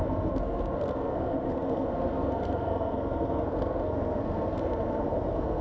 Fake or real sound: fake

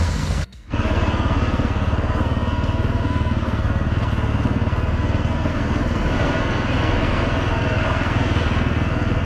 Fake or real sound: fake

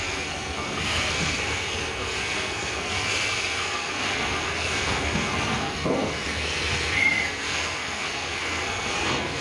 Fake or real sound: fake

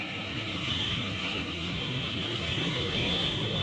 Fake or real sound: fake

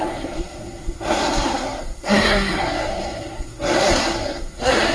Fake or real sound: fake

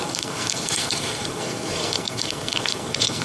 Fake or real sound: fake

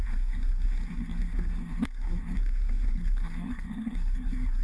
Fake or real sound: fake